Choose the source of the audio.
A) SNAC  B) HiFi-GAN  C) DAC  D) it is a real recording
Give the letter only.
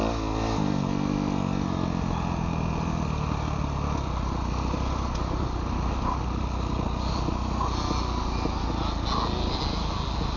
D